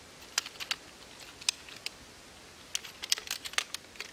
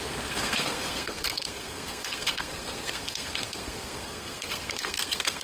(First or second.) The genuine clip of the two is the first